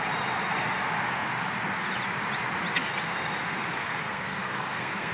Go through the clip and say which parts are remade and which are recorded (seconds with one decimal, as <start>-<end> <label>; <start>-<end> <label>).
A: 0.0-3.8 recorded; 3.8-5.1 remade